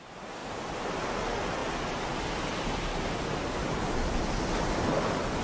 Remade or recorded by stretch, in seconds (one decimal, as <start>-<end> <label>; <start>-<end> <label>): 0.0-0.4 recorded; 0.4-1.0 remade; 1.0-3.6 recorded; 3.6-4.2 remade; 4.2-5.4 recorded